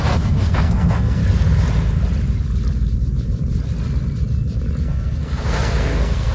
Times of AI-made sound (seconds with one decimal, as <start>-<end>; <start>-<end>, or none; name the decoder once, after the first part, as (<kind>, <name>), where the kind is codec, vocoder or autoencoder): 0.0-1.2 (codec, SNAC); 4.8-6.3